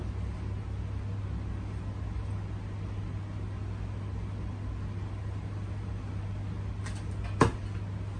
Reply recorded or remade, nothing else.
recorded